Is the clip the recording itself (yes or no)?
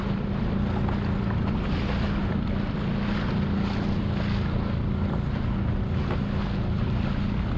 yes